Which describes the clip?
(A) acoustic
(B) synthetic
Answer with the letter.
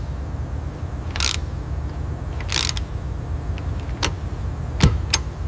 A